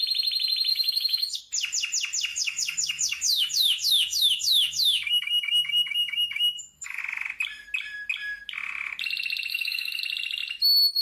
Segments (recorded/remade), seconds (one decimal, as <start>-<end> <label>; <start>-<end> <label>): 0.0-0.7 recorded; 0.7-1.4 remade; 1.4-2.3 recorded; 2.3-7.0 remade; 7.0-9.5 recorded; 9.5-10.0 remade; 10.0-11.0 recorded